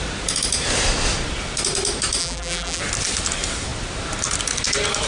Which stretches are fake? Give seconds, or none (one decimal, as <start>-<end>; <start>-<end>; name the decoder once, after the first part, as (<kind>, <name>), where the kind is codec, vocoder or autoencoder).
2.2-2.8 (vocoder, BigVGAN v2)